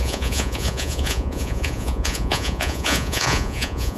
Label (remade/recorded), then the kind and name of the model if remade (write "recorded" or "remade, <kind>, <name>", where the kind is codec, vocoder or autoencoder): remade, vocoder, Vocos